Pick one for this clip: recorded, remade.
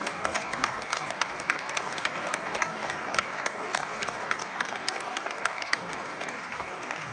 remade